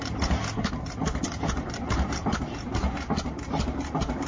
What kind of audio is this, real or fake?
real